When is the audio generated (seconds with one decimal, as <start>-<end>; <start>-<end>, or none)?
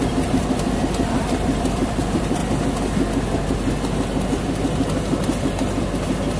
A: 0.0-2.4